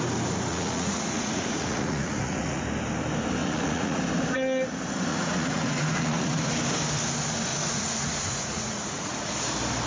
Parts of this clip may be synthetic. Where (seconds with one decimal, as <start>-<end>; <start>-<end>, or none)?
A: 0.5-2.6; 3.4-4.0; 5.1-6.5; 7.5-9.3